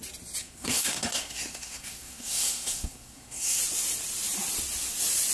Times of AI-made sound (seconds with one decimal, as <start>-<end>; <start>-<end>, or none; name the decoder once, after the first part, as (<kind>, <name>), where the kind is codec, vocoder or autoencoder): 0.4-3.6 (codec, SNAC)